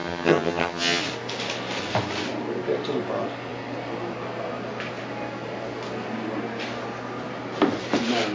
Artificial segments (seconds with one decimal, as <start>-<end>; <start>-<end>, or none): 0.0-1.0